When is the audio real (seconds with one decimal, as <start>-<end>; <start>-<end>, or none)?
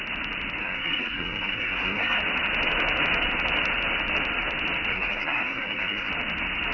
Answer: 0.0-0.6; 2.2-4.9; 6.1-6.7